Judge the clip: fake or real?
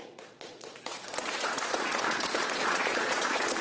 fake